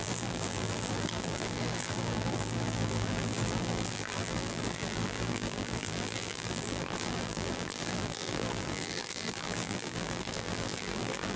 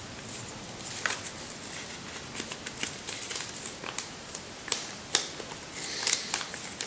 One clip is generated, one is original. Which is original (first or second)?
second